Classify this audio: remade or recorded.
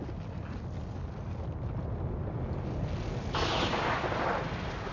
recorded